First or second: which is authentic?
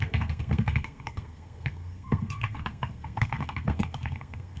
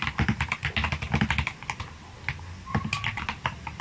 second